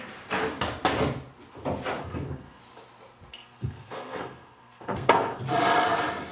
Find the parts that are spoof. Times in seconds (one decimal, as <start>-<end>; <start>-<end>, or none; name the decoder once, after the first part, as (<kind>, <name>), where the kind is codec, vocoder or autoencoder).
2.0-2.6 (codec, SNAC); 3.3-5.4